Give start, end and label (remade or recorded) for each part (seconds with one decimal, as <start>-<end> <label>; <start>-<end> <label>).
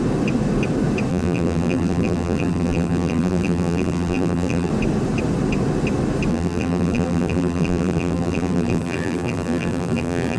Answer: 0.0-1.1 recorded; 1.1-4.7 remade; 4.7-6.3 recorded; 6.3-10.4 remade